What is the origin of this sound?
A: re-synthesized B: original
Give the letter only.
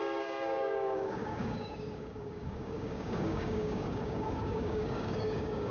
A